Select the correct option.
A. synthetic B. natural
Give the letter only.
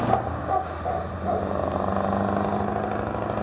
B